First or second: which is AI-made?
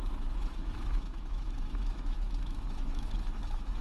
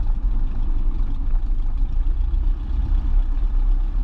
first